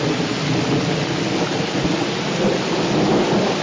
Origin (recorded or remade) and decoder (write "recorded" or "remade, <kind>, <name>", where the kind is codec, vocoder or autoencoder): recorded